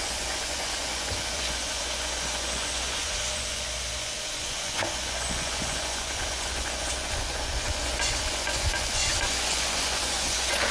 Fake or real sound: fake